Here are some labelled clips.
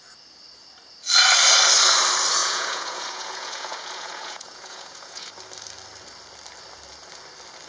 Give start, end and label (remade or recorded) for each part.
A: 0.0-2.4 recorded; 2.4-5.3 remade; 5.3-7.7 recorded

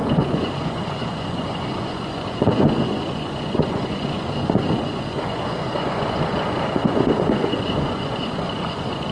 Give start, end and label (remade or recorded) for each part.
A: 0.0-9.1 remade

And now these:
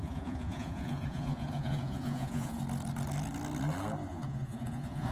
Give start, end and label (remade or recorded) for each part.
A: 0.0-2.6 remade; 2.6-4.1 recorded; 4.1-5.1 remade

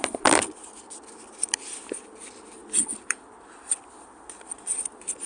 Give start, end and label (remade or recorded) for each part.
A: 0.0-5.3 recorded